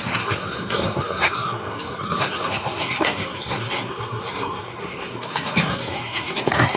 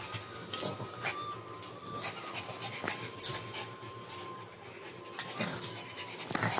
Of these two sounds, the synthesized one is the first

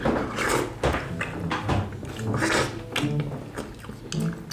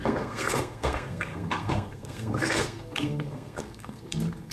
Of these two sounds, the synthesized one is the second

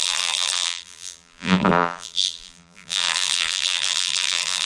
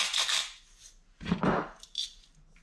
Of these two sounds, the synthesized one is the first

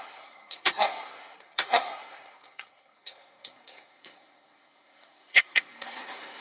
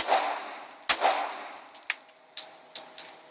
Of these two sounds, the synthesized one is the first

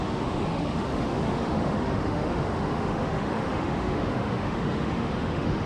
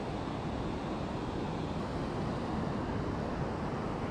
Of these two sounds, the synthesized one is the first